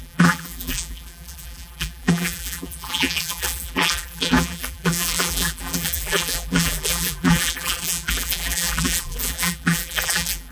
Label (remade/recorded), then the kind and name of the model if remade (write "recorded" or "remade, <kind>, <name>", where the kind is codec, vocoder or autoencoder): remade, vocoder, BigVGAN v2